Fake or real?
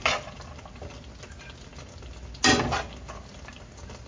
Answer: real